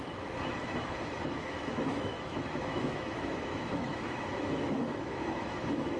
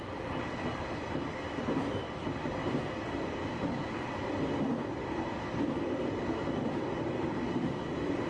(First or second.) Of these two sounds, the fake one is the first